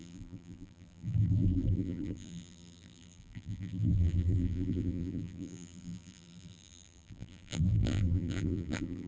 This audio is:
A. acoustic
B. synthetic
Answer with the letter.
B